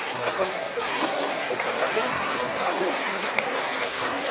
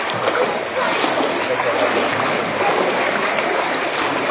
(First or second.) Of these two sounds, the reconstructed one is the first